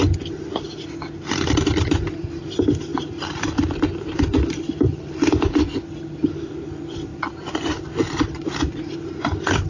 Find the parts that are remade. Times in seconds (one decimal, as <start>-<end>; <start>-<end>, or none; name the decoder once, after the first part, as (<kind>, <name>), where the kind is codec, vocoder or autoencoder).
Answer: 1.8-2.4 (vocoder, BigVGAN v2); 2.9-5.4; 7.1-8.6